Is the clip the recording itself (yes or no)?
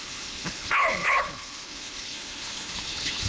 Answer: no